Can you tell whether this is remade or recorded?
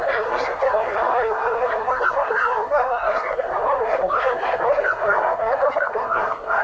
remade